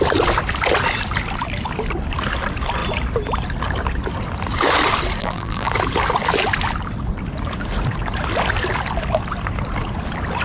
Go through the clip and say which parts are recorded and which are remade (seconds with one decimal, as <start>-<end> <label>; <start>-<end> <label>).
0.0-5.2 recorded; 5.2-5.7 remade; 5.7-10.4 recorded